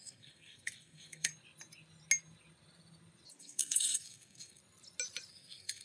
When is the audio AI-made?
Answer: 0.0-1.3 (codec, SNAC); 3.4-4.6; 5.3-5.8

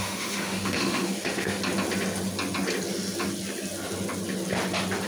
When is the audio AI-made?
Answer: 0.0-1.6 (autoencoder, DAC-VAE)

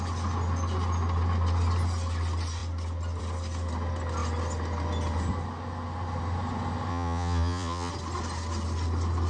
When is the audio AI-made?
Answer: 6.9-7.9 (vocoder, Vocos)

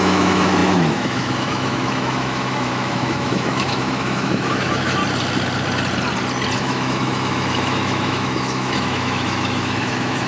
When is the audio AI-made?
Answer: 0.0-5.0 (autoencoder, DAC-VAE); 6.6-10.3

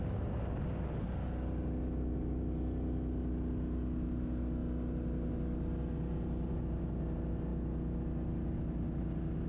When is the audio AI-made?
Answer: none

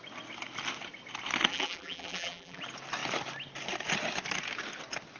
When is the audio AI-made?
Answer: 1.5-2.6 (vocoder, BigVGAN v2)